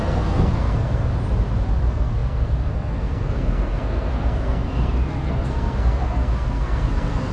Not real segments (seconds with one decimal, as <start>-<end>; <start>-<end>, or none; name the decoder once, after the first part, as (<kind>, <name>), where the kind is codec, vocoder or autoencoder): 0.0-1.1 (codec, SNAC); 1.8-7.3